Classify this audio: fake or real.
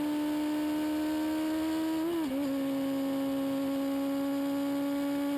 real